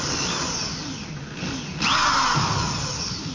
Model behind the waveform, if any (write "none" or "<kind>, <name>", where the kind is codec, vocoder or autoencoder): none